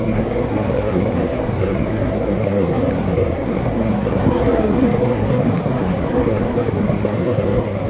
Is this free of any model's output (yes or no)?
no